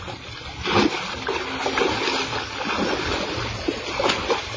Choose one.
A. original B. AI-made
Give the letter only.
A